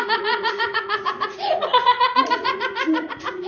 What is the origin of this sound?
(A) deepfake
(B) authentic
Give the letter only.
A